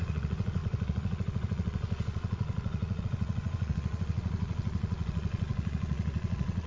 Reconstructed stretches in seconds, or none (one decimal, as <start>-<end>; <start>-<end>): 0.0-6.7